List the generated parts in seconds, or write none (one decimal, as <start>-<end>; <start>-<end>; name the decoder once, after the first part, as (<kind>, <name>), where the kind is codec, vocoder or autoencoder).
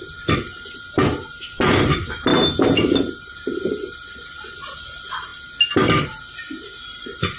none